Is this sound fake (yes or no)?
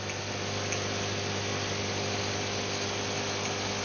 no